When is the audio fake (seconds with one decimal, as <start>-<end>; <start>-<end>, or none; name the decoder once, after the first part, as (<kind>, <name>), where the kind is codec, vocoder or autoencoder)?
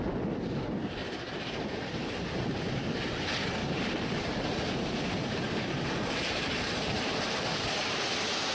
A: 1.0-3.0 (vocoder, BigVGAN v2); 3.6-8.1